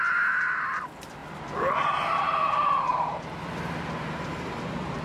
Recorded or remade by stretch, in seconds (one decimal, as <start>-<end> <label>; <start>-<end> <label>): 0.0-5.0 recorded